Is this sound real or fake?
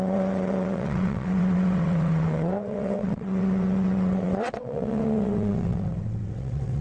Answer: fake